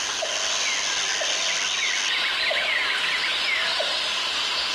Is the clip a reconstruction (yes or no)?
no